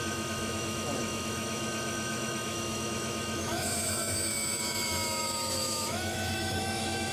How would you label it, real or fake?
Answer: fake